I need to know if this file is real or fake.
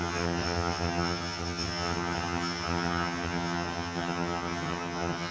fake